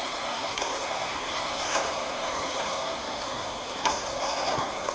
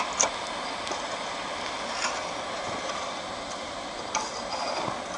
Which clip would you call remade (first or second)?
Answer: first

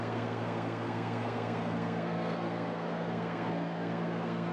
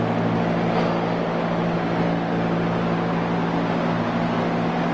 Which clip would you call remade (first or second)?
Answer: first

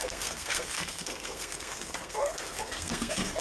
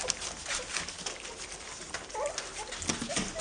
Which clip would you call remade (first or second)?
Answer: first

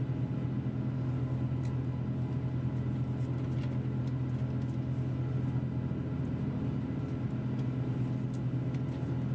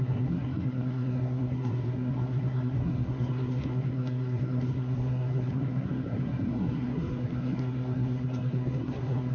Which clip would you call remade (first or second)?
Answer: second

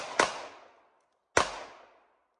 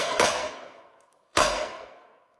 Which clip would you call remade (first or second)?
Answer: second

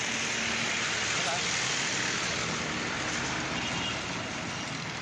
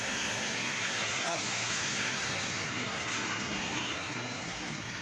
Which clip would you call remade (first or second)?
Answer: second